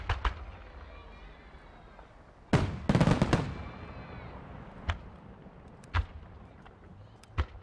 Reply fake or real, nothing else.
real